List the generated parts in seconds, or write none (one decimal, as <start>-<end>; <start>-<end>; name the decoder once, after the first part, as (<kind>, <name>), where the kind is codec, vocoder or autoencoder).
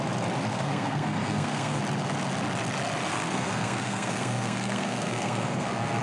0.5-1.8 (codec, SNAC); 3.1-6.0